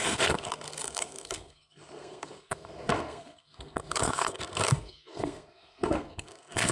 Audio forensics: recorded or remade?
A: remade